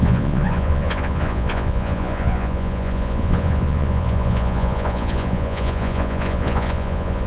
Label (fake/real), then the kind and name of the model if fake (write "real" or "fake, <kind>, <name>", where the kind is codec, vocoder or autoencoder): fake, vocoder, Vocos